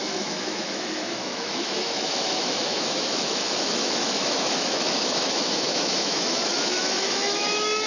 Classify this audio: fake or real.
fake